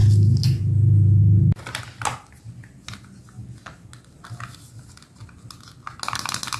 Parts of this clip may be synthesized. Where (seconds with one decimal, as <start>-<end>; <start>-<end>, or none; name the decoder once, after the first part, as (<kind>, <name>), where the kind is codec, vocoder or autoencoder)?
none